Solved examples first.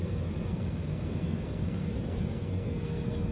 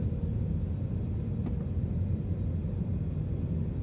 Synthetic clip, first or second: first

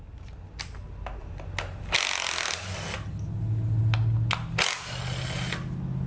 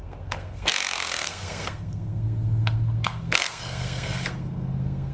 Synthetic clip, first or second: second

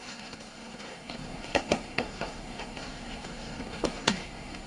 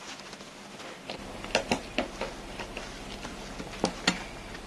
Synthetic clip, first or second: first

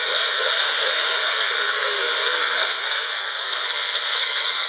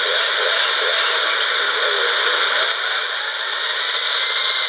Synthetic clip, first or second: first